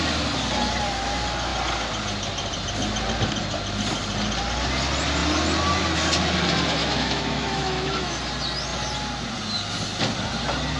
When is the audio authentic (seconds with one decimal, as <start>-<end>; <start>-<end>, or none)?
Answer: 0.0-6.8; 8.2-10.8